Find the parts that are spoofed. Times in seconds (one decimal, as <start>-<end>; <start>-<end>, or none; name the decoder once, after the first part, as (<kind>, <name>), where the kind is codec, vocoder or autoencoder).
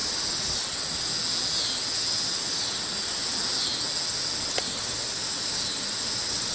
none